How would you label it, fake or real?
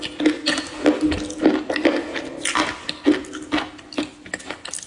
real